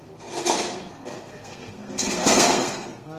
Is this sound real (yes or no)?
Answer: no